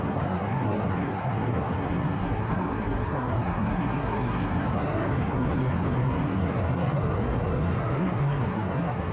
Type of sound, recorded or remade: remade